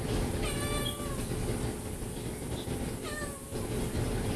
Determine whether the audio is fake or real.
real